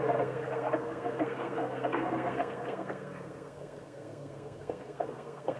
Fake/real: fake